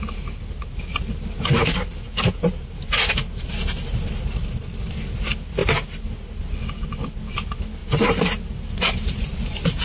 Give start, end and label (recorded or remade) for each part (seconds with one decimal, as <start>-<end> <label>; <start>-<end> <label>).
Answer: 0.0-9.8 recorded